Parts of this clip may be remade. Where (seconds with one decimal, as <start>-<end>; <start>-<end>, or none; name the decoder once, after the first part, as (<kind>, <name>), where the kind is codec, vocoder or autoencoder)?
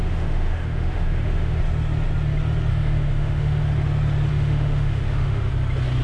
0.0-1.6 (autoencoder, DAC-VAE); 2.7-3.6; 4.3-5.5